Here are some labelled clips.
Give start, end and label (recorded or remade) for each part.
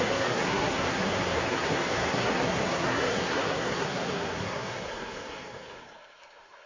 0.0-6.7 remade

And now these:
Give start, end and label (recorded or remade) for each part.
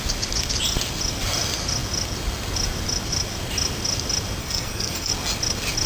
0.0-4.4 recorded; 4.4-5.1 remade; 5.1-5.9 recorded